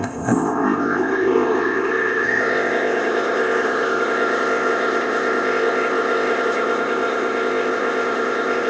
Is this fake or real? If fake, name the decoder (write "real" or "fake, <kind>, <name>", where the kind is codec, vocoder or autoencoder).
fake, codec, ZipCodec